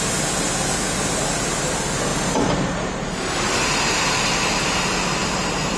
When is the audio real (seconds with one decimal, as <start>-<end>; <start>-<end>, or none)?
0.0-2.1; 3.5-5.8